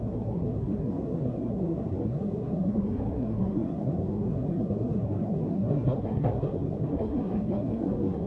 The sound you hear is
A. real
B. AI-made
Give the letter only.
B